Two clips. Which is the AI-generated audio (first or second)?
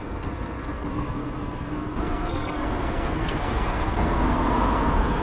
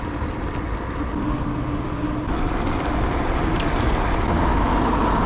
first